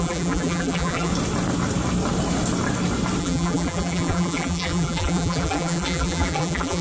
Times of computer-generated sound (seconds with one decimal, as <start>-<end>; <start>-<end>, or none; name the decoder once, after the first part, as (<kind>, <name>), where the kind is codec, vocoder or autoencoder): 0.0-1.1 (vocoder, BigVGAN v2); 3.2-6.8